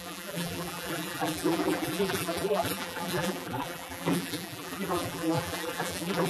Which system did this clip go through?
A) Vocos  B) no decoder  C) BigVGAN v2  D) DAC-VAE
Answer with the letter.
C